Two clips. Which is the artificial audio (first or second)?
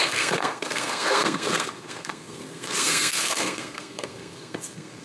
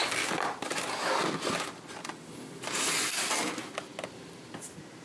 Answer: first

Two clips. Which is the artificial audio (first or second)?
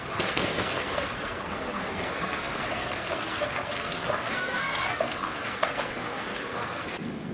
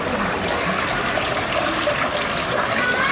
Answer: first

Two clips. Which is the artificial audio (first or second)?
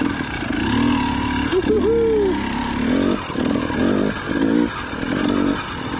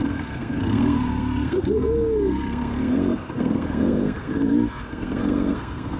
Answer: second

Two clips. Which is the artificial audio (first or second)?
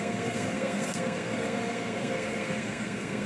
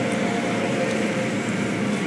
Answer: first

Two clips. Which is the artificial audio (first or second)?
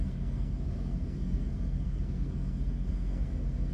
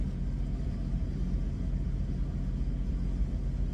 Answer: first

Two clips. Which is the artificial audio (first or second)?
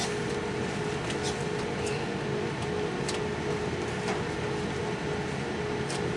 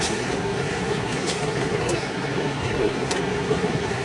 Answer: second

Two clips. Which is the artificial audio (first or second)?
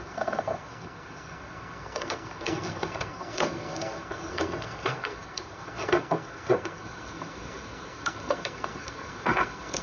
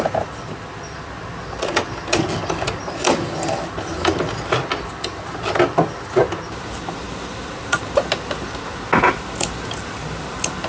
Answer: first